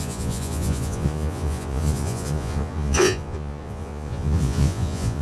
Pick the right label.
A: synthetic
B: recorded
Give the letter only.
A